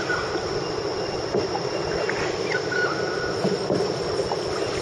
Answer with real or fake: real